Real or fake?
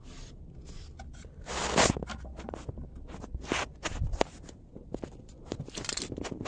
real